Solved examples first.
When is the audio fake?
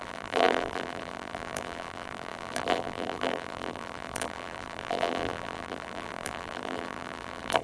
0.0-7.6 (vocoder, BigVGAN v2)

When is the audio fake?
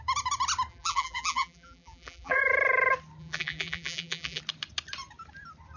0.7-2.4 (vocoder, BigVGAN v2); 3.2-4.4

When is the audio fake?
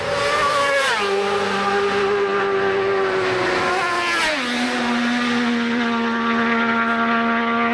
none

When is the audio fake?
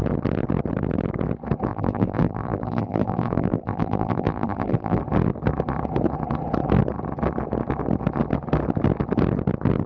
1.7-5.0 (vocoder, BigVGAN v2)